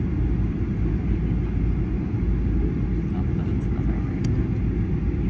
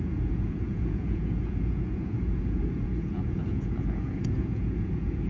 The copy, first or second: second